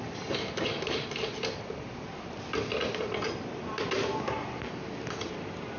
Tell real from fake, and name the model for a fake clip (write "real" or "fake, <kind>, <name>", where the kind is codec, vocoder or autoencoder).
real